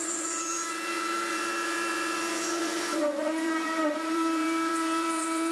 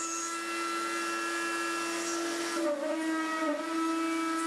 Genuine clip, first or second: second